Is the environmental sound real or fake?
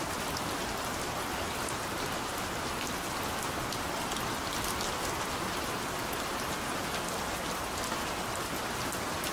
real